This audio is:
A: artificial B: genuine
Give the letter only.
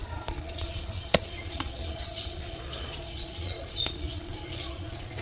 A